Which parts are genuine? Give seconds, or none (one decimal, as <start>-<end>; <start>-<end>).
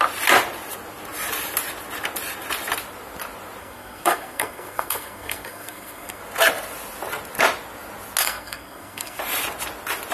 0.0-3.6; 6.2-8.2; 9.2-10.1